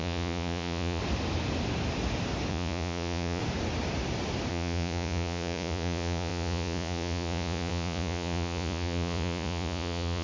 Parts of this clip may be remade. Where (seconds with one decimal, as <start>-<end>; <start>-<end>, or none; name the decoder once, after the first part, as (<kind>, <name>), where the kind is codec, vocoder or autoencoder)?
0.0-1.0 (vocoder, Vocos); 2.5-3.4; 4.5-10.2

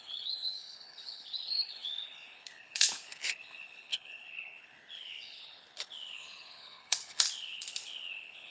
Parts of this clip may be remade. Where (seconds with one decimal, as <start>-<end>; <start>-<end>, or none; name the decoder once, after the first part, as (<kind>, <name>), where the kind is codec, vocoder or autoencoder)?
0.0-8.5 (codec, HILCodec)

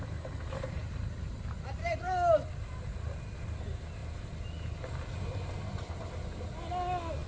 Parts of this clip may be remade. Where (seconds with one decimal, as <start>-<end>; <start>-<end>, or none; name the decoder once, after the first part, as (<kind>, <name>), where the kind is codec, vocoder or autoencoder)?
none

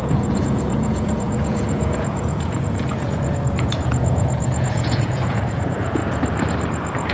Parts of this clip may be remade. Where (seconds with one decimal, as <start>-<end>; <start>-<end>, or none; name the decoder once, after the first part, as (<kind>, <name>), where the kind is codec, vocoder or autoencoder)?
0.0-6.0 (vocoder, Vocos)